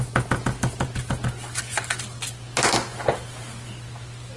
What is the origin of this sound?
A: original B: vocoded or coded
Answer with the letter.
A